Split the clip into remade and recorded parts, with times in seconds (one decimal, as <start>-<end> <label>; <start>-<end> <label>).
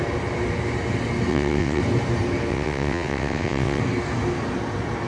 0.0-1.3 recorded; 1.3-1.8 remade; 1.8-2.5 recorded; 2.5-3.8 remade; 3.8-5.1 recorded